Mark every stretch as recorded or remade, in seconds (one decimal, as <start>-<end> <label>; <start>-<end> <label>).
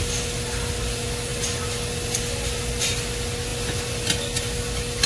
0.0-5.1 recorded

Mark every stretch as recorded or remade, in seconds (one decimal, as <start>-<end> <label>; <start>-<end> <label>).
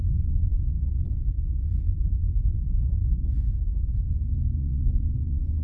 0.0-5.6 remade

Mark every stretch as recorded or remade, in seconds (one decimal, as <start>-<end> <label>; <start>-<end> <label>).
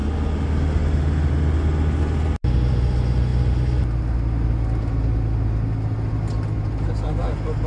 0.0-7.7 recorded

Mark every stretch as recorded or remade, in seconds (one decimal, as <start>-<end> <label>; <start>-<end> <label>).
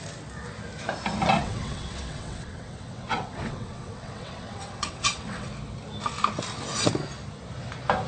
0.0-1.4 recorded; 1.4-5.5 remade; 5.5-8.1 recorded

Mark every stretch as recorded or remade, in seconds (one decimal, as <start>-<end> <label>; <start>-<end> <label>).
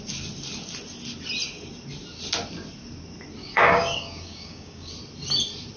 0.0-3.4 recorded; 3.4-4.9 remade; 4.9-5.8 recorded